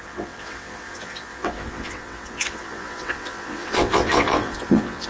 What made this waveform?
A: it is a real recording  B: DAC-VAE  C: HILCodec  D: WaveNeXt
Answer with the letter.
D